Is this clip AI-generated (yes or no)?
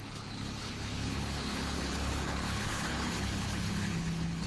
yes